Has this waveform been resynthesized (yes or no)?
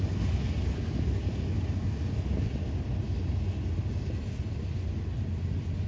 no